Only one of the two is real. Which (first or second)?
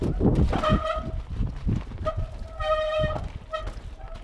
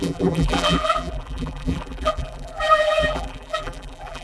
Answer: first